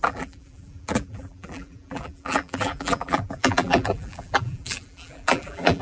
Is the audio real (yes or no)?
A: no